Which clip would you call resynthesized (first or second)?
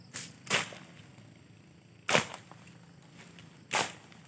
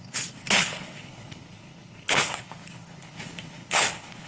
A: second